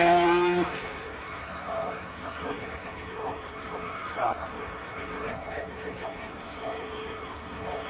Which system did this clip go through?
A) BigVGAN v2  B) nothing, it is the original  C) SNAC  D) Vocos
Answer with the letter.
C